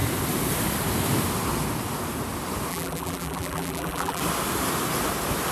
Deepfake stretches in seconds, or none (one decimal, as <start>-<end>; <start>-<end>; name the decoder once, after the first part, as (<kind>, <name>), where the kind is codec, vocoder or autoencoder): 2.7-4.2 (vocoder, BigVGAN v2)